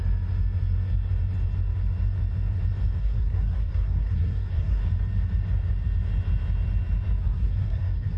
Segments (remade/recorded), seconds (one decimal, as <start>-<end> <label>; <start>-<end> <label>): 0.0-3.0 recorded; 3.0-4.8 remade; 4.8-7.2 recorded; 7.2-8.2 remade